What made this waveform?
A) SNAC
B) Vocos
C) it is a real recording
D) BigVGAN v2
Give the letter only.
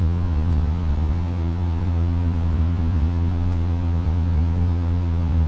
B